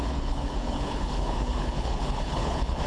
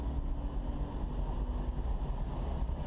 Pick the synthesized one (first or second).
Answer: first